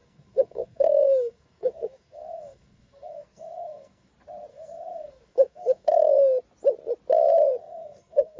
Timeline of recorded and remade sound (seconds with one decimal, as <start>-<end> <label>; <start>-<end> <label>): 0.0-4.1 remade; 4.1-4.5 recorded; 4.5-6.1 remade; 6.1-7.6 recorded; 7.6-8.4 remade